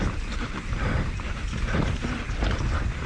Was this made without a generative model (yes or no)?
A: no